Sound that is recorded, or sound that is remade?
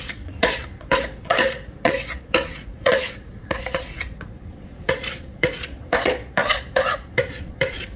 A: remade